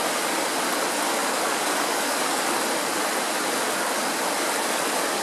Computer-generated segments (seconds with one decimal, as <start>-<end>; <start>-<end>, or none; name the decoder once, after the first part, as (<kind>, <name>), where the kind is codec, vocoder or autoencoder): 1.2-2.4 (codec, DAC)